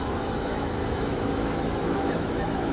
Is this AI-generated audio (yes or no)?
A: yes